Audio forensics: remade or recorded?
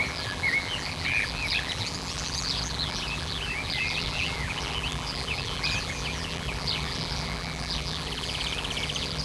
remade